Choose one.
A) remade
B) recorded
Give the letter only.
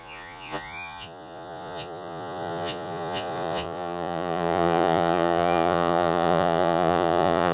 A